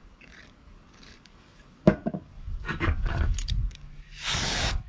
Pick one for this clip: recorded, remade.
remade